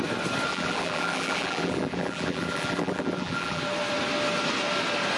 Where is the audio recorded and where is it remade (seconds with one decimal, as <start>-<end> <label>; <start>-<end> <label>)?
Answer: 0.0-0.5 recorded; 0.5-3.6 remade; 3.6-5.2 recorded